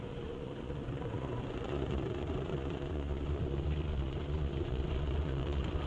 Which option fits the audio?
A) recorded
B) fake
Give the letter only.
B